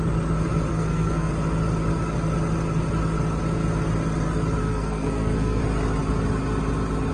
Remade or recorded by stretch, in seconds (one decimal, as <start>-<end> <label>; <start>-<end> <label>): 0.0-0.7 recorded; 0.7-1.3 remade; 1.3-4.6 recorded; 4.6-5.6 remade; 5.6-7.1 recorded